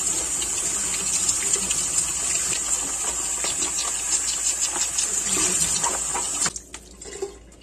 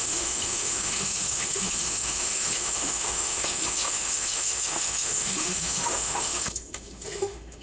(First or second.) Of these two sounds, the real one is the first